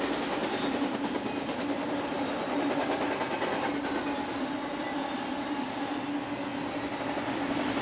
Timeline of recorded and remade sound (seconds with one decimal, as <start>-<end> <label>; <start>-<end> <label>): 0.0-7.8 recorded